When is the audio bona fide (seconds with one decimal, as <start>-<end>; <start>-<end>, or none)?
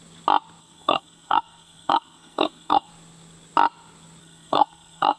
0.0-0.6; 2.9-4.2